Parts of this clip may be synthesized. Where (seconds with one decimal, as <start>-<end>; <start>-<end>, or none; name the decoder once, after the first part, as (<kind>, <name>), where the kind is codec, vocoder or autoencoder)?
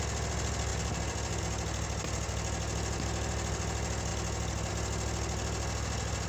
none